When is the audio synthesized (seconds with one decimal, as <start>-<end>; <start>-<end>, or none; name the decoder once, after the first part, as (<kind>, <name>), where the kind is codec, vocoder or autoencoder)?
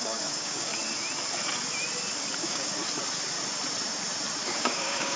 0.0-0.7 (codec, DAC); 2.4-2.8; 4.4-5.2